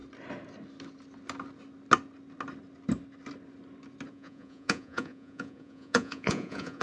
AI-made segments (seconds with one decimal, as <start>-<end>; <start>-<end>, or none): 4.1-6.8